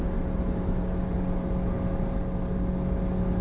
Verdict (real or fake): real